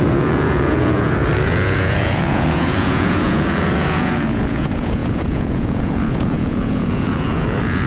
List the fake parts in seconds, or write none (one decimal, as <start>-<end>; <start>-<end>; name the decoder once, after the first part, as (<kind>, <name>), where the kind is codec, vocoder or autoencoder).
0.0-7.9 (vocoder, Vocos)